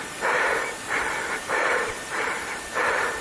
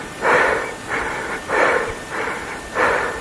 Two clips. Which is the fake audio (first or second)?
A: first